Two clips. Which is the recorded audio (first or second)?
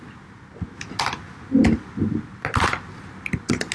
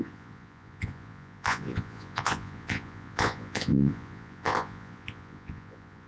first